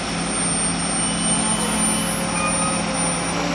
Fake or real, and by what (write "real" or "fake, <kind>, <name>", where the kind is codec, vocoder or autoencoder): real